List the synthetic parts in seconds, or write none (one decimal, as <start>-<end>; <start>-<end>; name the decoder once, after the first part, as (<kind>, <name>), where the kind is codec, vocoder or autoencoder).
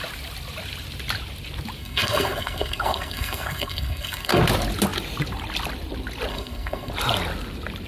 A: 1.8-4.4 (codec, SNAC); 6.3-6.9